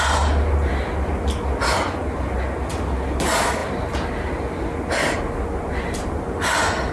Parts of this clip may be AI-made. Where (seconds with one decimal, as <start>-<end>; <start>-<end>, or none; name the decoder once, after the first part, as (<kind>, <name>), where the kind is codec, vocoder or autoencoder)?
none